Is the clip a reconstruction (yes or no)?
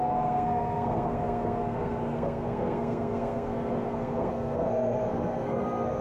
yes